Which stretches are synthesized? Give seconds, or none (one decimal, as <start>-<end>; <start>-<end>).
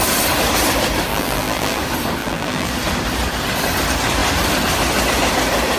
1.1-1.8; 2.2-2.7